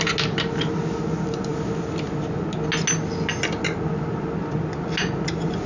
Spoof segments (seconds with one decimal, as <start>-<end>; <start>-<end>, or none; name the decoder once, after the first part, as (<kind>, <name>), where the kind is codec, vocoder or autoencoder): none